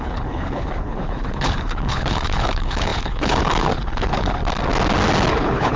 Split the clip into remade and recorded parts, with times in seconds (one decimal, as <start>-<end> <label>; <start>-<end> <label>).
0.0-4.4 remade; 4.4-5.3 recorded; 5.3-5.8 remade